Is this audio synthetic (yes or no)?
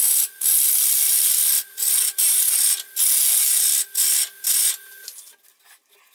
no